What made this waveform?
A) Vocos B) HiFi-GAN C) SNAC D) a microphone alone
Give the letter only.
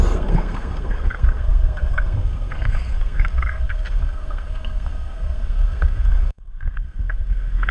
C